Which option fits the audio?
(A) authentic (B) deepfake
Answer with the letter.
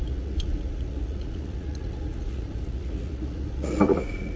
B